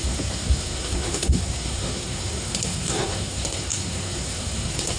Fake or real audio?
fake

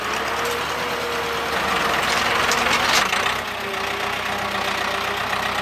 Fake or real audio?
real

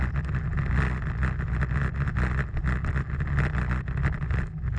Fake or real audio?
real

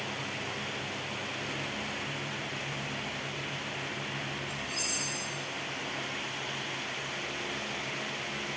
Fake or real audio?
real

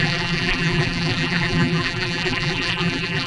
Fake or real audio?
fake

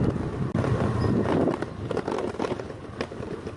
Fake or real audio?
real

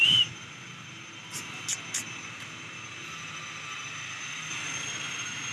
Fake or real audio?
real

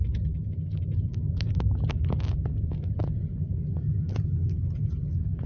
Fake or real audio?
real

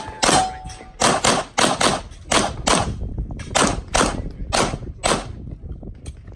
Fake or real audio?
real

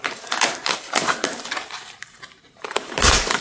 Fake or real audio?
fake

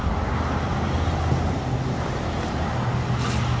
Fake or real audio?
real